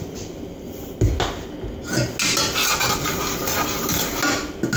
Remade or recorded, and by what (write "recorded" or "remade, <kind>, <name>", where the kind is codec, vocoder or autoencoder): recorded